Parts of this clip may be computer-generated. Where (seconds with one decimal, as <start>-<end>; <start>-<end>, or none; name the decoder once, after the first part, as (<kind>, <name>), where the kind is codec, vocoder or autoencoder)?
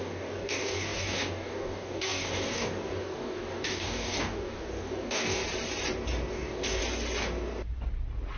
0.0-5.4 (codec, DAC); 6.3-6.8